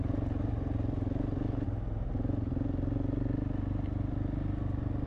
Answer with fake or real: real